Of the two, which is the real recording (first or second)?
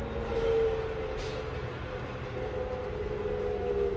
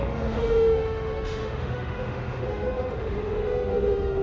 first